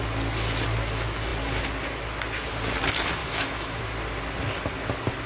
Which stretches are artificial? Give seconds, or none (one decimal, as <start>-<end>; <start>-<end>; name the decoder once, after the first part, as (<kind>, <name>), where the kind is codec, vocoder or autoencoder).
3.2-3.8 (autoencoder, DAC-VAE)